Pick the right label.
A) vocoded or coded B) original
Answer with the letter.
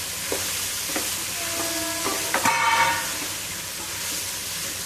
B